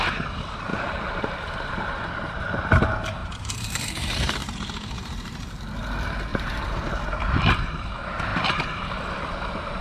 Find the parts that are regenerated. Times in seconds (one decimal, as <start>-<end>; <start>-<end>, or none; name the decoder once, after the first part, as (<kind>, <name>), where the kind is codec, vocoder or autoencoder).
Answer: 0.7-2.8 (vocoder, BigVGAN v2); 3.2-5.6; 6.3-6.9